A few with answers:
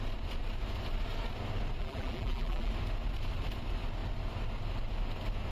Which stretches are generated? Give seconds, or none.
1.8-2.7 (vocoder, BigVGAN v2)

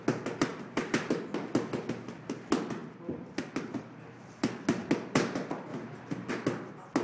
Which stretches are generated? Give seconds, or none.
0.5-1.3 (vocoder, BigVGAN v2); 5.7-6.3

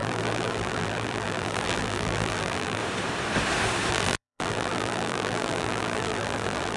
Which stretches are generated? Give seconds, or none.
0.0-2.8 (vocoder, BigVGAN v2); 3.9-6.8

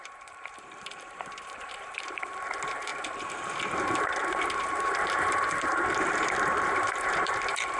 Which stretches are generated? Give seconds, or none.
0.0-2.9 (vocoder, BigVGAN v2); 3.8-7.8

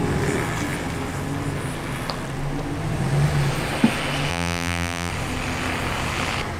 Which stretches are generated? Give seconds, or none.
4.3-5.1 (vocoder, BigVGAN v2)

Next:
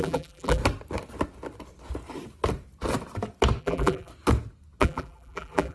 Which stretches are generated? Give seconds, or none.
0.0-0.6 (vocoder, BigVGAN v2); 3.6-4.1; 4.8-5.7

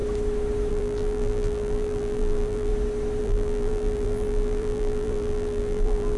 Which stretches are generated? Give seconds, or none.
0.7-2.7 (vocoder, BigVGAN v2); 3.2-6.2

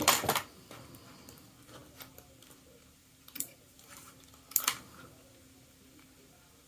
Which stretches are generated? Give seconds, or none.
3.0-4.2 (vocoder, BigVGAN v2)